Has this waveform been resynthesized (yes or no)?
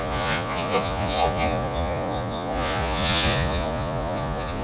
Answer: yes